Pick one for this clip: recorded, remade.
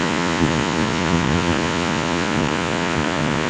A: remade